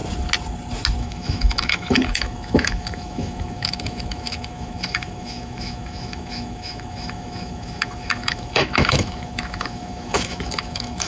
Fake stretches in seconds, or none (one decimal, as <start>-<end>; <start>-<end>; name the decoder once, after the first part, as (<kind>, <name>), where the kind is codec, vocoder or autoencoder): 1.0-11.1 (autoencoder, DAC-VAE)